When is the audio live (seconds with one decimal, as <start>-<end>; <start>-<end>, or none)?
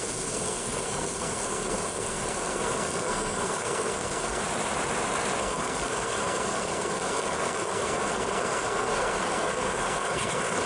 4.4-5.4